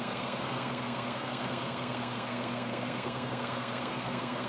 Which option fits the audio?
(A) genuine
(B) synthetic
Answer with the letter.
B